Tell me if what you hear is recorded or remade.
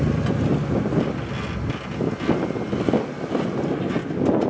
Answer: recorded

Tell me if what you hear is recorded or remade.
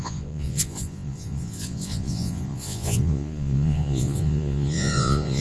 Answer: remade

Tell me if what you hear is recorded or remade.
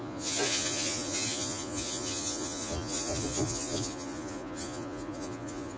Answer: remade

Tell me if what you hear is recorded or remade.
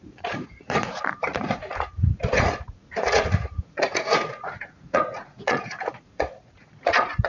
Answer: remade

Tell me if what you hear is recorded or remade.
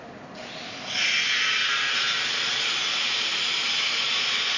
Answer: recorded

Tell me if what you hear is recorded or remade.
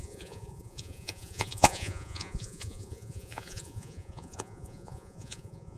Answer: remade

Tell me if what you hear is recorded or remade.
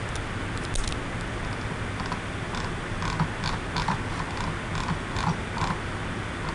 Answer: recorded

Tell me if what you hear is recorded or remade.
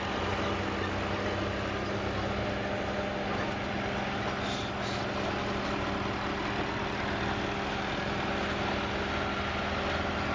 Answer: recorded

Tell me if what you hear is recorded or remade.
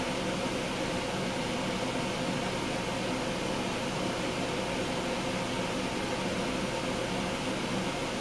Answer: recorded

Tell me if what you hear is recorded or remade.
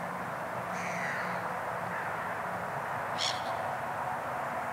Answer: recorded